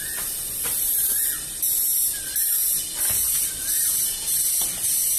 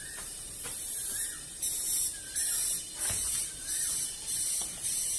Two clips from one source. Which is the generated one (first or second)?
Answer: second